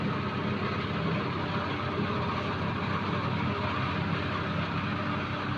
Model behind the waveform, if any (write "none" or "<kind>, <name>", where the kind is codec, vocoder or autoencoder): none